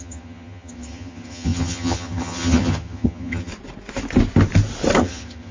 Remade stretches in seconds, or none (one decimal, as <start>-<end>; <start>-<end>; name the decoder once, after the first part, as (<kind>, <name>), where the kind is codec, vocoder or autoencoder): 0.0-3.5 (vocoder, HiFi-GAN); 5.0-5.5